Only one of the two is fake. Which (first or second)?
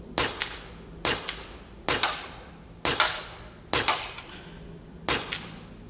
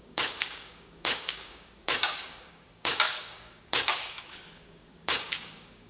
second